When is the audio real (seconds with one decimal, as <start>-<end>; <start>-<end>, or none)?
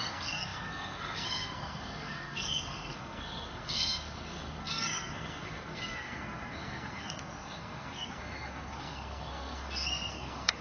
none